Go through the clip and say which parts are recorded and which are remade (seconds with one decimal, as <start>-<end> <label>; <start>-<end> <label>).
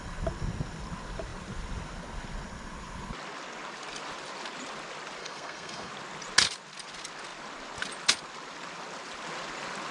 0.0-5.2 recorded; 5.2-5.9 remade; 5.9-9.9 recorded